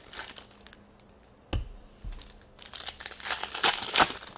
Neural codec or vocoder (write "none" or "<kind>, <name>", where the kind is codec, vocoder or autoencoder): none